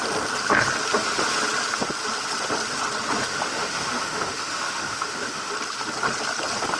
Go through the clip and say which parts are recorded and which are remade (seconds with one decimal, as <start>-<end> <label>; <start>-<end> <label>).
0.0-3.3 recorded; 3.3-5.5 remade; 5.5-6.8 recorded